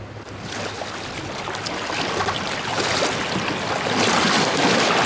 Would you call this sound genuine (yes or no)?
yes